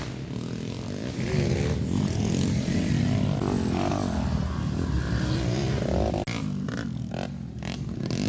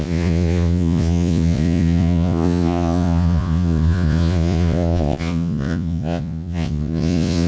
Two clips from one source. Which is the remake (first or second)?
second